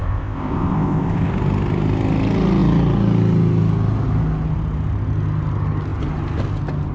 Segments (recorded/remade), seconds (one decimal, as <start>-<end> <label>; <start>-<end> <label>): 0.0-1.3 remade; 1.3-6.9 recorded